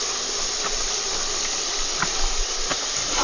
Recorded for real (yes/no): yes